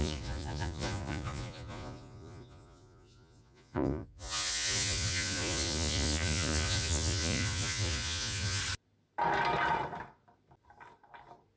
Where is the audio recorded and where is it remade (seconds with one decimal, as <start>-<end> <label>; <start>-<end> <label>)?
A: 0.0-8.6 remade; 8.6-11.6 recorded